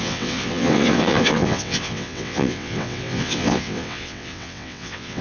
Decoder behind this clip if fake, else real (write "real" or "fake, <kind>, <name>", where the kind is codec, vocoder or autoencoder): fake, vocoder, WaveNeXt